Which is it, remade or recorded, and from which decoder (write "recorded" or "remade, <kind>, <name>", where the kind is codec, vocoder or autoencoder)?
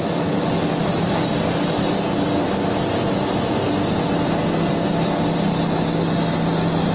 recorded